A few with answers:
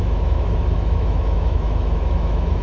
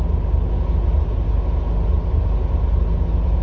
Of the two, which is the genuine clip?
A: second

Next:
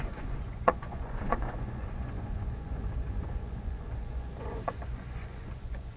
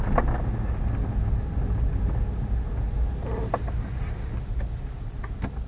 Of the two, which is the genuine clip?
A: second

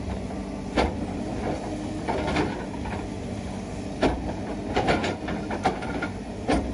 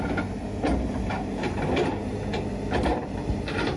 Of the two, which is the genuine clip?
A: second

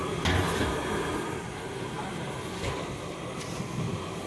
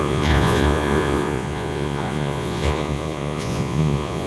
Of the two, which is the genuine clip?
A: first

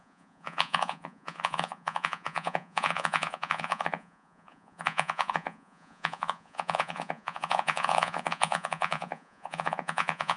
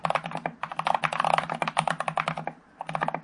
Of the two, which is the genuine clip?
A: second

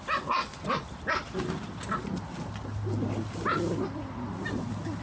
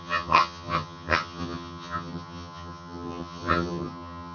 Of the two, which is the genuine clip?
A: first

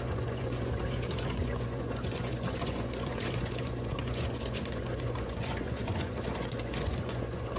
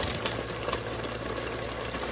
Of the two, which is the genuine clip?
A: second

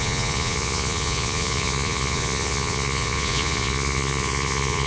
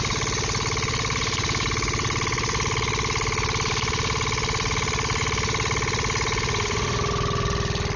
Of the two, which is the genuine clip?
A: second